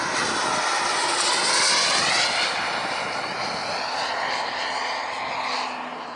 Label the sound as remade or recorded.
recorded